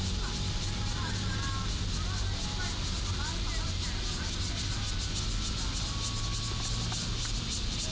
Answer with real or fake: real